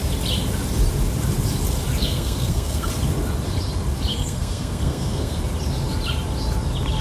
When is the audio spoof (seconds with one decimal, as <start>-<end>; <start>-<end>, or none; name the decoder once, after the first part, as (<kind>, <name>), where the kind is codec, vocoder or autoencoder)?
2.0-2.9 (codec, SNAC); 4.1-5.4